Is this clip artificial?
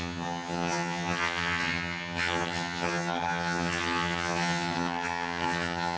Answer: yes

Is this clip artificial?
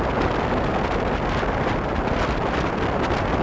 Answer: no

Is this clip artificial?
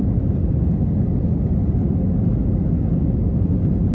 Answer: no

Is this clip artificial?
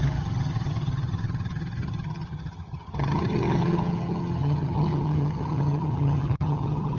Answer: yes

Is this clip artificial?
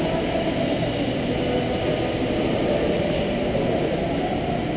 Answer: no